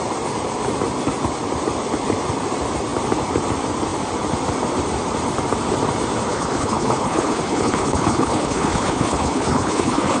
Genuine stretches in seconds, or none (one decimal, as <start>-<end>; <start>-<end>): 0.0-6.3